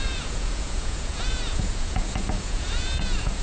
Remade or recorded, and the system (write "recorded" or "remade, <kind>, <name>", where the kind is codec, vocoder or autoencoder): remade, vocoder, Vocos